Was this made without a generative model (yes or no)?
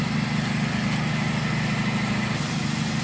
yes